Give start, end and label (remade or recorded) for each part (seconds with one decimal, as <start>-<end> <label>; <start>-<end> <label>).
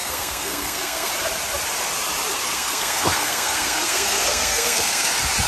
0.0-1.1 remade; 1.1-2.3 recorded; 2.3-5.1 remade; 5.1-5.5 recorded